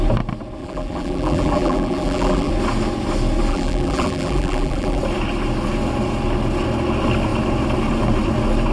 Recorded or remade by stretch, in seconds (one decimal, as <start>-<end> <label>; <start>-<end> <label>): 0.0-0.6 recorded; 0.6-2.5 remade; 2.5-3.5 recorded; 3.5-5.0 remade; 5.0-8.7 recorded